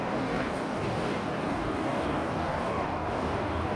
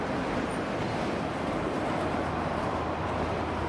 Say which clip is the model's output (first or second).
first